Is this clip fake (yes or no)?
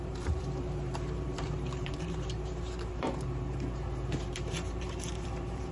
yes